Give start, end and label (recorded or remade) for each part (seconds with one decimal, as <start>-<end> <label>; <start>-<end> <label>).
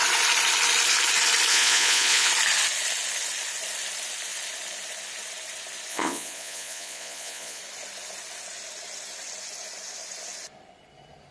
0.0-1.5 recorded; 1.5-2.3 remade; 2.3-5.9 recorded; 5.9-7.6 remade; 7.6-11.3 recorded